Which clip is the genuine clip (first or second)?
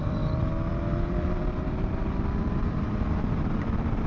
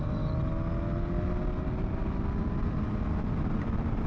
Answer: second